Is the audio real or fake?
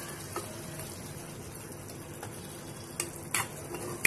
real